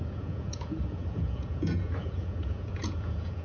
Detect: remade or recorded remade